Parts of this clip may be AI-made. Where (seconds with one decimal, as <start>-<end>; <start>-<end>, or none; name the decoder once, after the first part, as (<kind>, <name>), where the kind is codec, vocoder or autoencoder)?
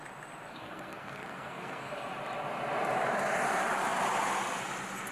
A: 0.5-1.9 (codec, SNAC)